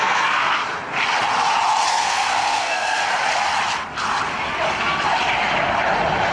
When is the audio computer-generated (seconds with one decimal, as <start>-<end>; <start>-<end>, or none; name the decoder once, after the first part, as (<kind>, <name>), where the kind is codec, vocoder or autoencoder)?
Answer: 0.0-0.6 (codec, SNAC); 1.9-3.1